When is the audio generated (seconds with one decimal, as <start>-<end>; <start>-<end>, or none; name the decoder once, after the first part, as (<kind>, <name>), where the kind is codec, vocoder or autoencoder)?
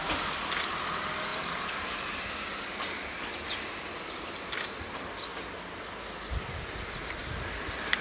1.3-2.6 (vocoder, BigVGAN v2)